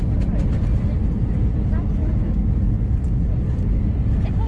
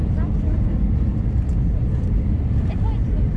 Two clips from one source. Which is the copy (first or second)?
second